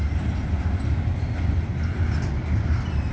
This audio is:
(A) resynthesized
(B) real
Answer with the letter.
B